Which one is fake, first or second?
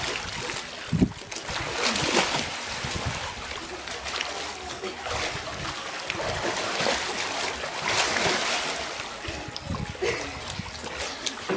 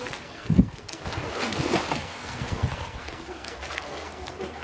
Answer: second